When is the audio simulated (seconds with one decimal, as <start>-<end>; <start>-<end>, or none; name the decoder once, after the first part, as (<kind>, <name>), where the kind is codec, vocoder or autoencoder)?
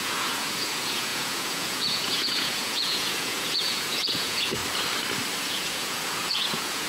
0.0-4.6 (vocoder, Vocos); 5.4-6.9